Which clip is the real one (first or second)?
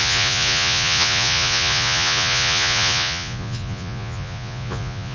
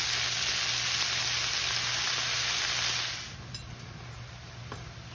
second